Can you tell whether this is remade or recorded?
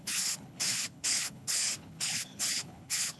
remade